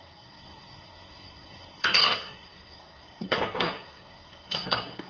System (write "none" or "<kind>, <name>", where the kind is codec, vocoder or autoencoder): codec, SNAC